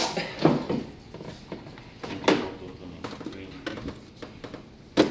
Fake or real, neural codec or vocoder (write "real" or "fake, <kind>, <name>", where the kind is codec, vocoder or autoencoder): real